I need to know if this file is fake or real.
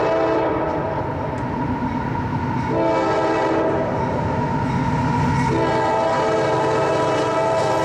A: real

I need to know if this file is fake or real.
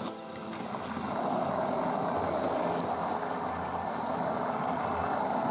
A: real